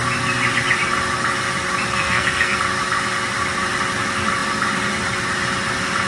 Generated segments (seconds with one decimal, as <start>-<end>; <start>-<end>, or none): 1.9-2.6